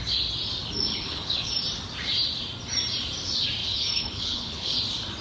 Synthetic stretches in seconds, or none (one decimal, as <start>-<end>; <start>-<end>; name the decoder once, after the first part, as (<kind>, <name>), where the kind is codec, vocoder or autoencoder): 0.9-1.5 (codec, HILCodec); 3.6-4.8

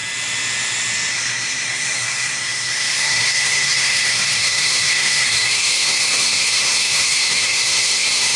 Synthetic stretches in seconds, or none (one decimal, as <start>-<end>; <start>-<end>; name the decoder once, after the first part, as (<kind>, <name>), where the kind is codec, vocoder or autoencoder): 1.1-8.4 (codec, SNAC)

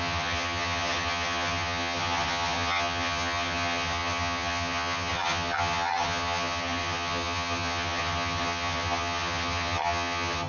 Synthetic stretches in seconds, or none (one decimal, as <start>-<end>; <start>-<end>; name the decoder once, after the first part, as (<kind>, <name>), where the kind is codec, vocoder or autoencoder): 0.0-10.5 (vocoder, HiFi-GAN)